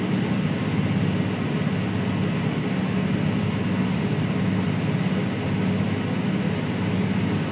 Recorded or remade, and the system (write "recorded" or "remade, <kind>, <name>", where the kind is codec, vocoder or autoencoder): recorded